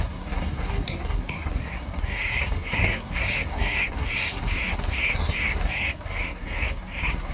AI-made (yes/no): yes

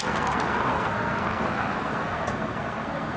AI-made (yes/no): yes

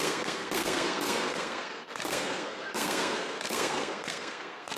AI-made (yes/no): yes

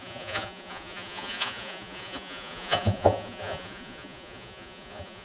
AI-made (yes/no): yes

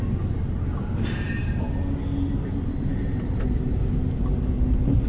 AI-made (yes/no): no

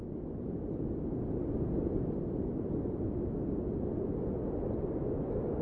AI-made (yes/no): no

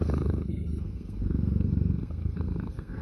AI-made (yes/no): yes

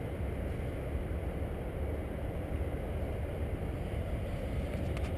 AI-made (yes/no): no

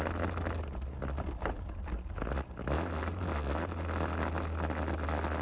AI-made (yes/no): no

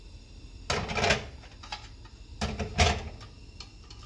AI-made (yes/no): no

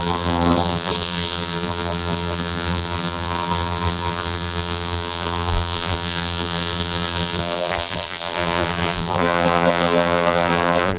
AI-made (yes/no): yes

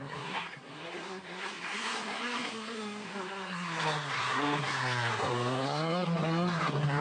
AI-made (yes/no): yes